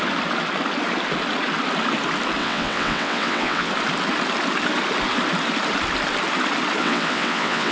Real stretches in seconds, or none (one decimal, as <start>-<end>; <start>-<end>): 0.0-2.4; 3.7-6.8